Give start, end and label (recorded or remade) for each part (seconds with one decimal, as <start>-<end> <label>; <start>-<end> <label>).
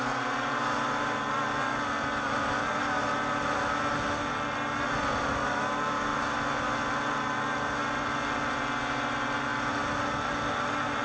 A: 0.0-11.0 recorded